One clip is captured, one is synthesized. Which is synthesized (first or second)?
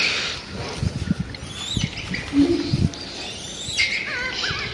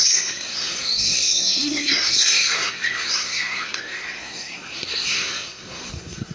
second